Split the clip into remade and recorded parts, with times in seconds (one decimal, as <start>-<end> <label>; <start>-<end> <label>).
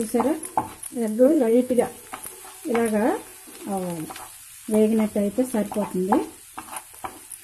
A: 0.0-0.9 recorded; 0.9-1.8 remade; 1.8-7.4 recorded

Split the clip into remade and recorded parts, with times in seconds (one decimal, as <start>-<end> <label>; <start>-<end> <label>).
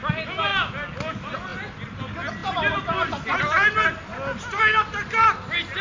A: 0.0-5.8 recorded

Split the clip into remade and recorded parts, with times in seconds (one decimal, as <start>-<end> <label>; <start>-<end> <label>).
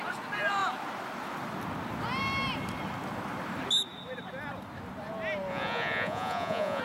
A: 0.0-5.5 recorded; 5.5-6.8 remade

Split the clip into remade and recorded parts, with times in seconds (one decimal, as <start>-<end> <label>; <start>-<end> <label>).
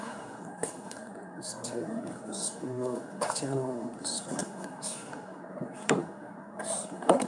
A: 0.0-7.3 remade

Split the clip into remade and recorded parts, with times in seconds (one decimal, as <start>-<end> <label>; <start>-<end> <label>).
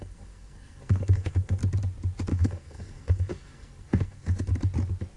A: 0.0-1.6 remade; 1.6-2.3 recorded; 2.3-4.5 remade; 4.5-5.2 recorded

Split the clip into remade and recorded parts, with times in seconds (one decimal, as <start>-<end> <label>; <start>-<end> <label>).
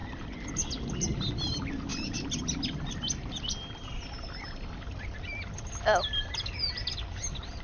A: 0.0-0.5 remade; 0.5-1.9 recorded; 1.9-6.5 remade; 6.5-7.6 recorded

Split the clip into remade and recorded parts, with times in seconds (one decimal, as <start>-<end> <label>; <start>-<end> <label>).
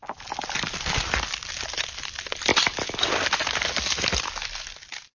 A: 0.0-5.2 recorded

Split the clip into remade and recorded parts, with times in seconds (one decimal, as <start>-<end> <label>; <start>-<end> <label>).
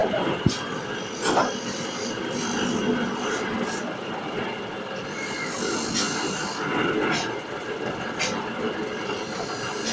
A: 0.0-4.1 remade; 4.1-9.9 recorded